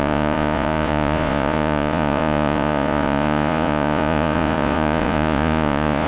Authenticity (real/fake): fake